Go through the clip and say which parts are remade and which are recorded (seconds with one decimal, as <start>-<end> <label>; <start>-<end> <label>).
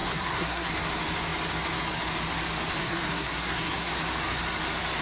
0.0-0.7 remade; 0.7-2.8 recorded; 2.8-3.9 remade; 3.9-5.0 recorded